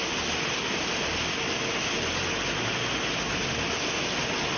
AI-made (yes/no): no